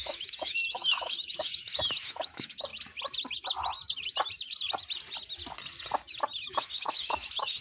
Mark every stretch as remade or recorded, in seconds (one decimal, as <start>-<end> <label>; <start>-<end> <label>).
0.0-2.7 remade; 2.7-6.5 recorded; 6.5-7.6 remade